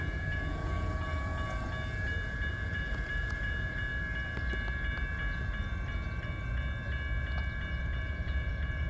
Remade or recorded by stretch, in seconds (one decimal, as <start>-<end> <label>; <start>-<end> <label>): 0.0-1.3 remade; 1.3-2.5 recorded; 2.5-3.9 remade; 3.9-7.7 recorded; 7.7-8.9 remade